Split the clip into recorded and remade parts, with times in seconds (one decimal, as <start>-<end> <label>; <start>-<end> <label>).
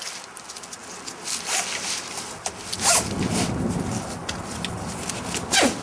0.0-5.8 recorded